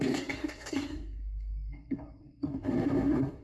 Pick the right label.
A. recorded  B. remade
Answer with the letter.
B